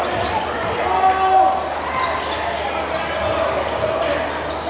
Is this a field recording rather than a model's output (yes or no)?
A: yes